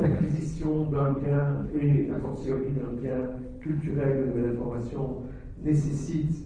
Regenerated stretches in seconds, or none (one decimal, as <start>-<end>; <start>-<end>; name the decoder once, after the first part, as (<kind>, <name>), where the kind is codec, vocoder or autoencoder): 0.0-3.9 (codec, HILCodec)